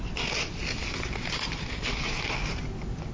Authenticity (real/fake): real